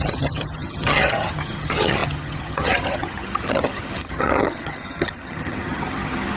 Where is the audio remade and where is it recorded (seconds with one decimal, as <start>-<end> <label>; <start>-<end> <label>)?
0.0-6.4 remade